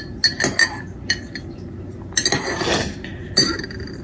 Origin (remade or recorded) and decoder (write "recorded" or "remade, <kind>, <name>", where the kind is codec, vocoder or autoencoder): recorded